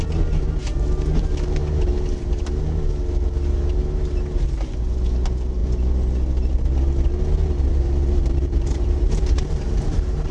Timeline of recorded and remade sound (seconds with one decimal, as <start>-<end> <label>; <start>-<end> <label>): 0.0-7.7 recorded; 7.7-10.3 remade